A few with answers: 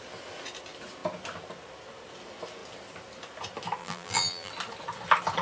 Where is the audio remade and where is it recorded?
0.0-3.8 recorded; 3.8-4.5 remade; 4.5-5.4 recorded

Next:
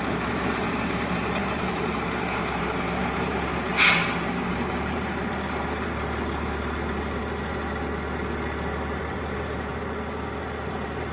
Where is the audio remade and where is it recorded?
0.0-3.5 remade; 3.5-4.5 recorded; 4.5-7.2 remade; 7.2-9.0 recorded; 9.0-9.7 remade; 9.7-10.7 recorded; 10.7-11.1 remade

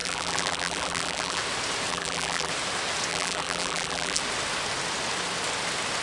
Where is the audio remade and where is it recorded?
0.0-1.4 remade; 1.4-1.9 recorded; 1.9-2.5 remade; 2.5-3.1 recorded; 3.1-4.2 remade; 4.2-6.0 recorded

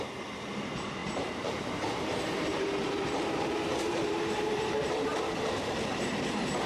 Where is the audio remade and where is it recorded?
0.0-5.1 remade; 5.1-5.9 recorded; 5.9-6.7 remade

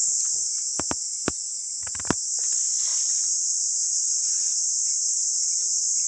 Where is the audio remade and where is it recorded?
0.0-0.7 recorded; 0.7-1.4 remade; 1.4-2.9 recorded; 2.9-6.1 remade

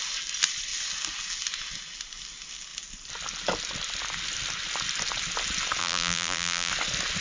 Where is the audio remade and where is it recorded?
0.0-5.8 recorded; 5.8-6.7 remade; 6.7-7.2 recorded